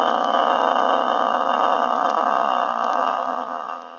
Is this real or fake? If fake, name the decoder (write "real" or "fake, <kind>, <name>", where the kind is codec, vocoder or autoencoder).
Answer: real